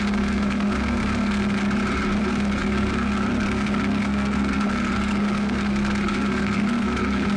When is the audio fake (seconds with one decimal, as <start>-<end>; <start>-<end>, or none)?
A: 0.0-1.6; 2.2-7.4